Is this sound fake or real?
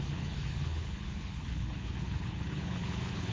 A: fake